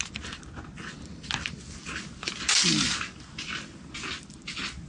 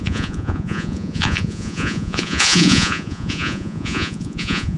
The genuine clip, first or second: first